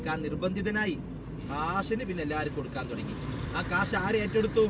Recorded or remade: recorded